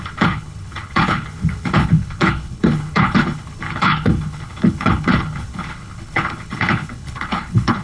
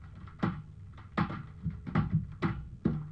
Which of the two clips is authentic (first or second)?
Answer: second